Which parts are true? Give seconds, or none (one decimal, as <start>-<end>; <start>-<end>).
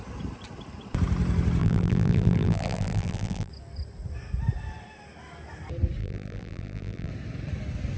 0.0-1.6; 3.5-6.0; 7.1-8.0